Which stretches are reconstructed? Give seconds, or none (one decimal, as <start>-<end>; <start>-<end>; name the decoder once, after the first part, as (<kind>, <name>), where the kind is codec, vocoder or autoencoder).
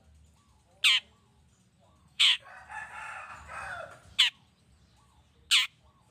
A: 2.0-2.5 (codec, SNAC)